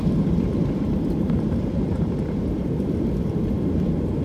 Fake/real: fake